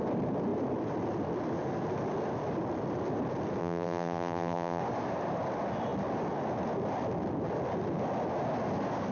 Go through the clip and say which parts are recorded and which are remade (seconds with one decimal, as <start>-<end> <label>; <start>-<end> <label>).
0.0-3.6 recorded; 3.6-4.8 remade; 4.8-9.1 recorded